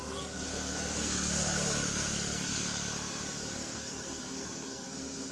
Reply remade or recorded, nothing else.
remade